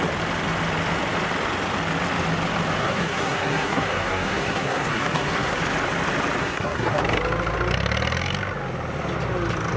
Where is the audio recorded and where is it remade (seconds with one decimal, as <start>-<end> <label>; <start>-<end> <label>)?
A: 0.0-2.8 recorded; 2.8-5.6 remade; 5.6-6.4 recorded; 6.4-7.0 remade; 7.0-9.8 recorded